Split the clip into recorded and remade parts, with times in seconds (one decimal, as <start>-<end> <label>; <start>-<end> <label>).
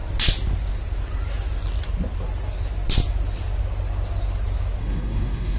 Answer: 0.0-4.8 recorded; 4.8-5.6 remade